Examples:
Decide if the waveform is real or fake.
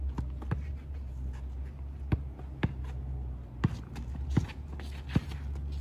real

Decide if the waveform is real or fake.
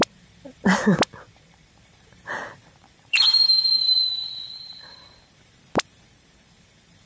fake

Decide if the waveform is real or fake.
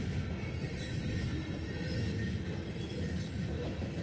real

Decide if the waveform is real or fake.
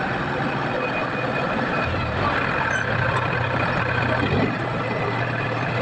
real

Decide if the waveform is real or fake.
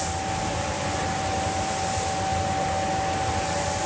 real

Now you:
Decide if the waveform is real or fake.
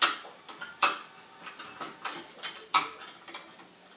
real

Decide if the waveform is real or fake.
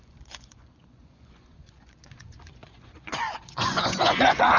fake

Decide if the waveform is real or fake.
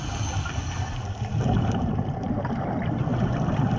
real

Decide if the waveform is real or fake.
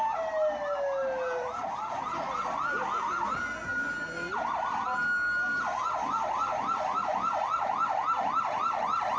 real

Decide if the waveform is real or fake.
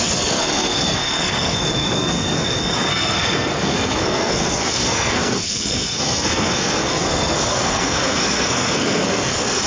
fake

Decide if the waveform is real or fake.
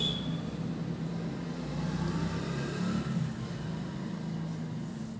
real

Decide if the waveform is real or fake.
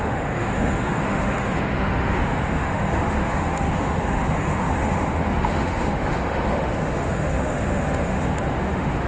fake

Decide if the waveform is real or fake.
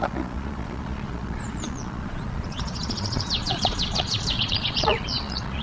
fake